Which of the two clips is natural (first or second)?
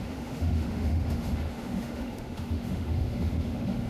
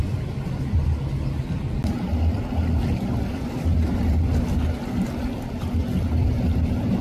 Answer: second